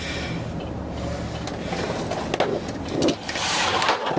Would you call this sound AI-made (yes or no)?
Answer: no